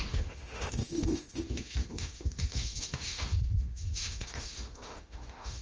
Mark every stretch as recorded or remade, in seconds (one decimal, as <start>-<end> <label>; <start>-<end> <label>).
0.0-5.6 remade